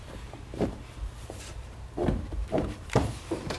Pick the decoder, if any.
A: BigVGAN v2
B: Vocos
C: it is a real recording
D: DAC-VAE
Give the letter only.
A